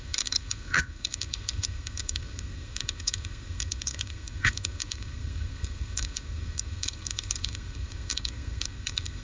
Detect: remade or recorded remade